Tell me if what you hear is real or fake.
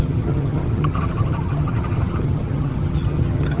fake